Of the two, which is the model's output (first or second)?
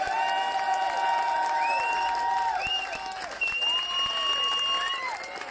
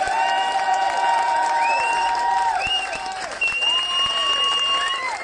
second